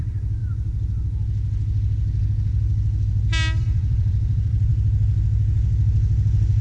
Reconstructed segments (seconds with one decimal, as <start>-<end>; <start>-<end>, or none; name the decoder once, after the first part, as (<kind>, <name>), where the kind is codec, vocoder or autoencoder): 0.0-0.4 (vocoder, BigVGAN v2); 3.6-4.7